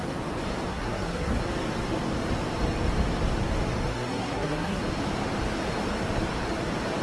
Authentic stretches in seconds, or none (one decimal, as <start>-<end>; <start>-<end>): 0.0-0.7; 1.4-3.9; 4.8-7.0